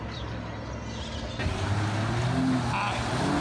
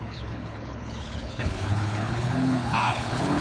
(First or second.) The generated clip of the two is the second